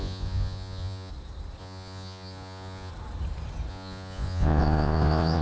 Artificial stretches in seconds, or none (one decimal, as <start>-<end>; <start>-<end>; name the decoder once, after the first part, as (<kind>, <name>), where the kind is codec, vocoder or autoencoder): 0.0-1.1 (vocoder, Vocos); 1.6-2.9; 3.7-5.4